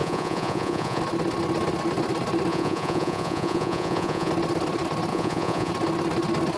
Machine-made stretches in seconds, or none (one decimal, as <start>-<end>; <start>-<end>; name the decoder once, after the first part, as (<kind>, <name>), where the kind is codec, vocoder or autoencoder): 0.0-1.0 (vocoder, Vocos); 2.5-4.3; 5.1-5.7